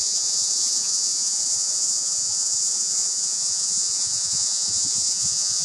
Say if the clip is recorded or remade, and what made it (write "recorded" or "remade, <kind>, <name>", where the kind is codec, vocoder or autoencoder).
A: remade, vocoder, Vocos